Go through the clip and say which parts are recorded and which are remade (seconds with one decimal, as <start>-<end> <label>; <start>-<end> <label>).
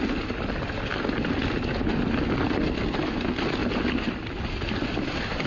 0.0-5.5 recorded